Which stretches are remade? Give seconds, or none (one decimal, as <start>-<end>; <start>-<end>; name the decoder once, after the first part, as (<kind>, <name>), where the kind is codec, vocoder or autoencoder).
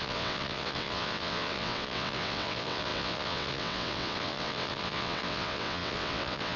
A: 0.0-6.6 (vocoder, WaveNeXt)